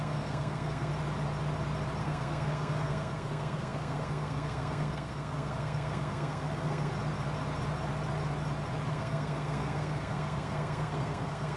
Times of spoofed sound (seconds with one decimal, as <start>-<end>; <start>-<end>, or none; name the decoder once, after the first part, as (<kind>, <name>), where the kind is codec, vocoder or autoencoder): 0.0-0.9 (codec, SNAC); 2.0-6.9; 8.9-11.6